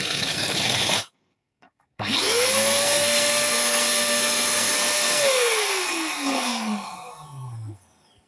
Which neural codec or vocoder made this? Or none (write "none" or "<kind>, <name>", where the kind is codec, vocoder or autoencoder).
codec, SNAC